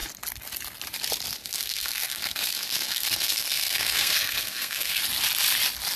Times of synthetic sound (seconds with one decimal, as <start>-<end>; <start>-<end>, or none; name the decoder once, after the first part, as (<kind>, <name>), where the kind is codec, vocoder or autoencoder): 1.4-5.0 (codec, SNAC)